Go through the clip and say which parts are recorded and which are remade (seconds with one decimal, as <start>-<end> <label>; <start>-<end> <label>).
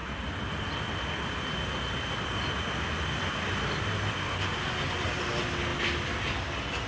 0.0-6.9 recorded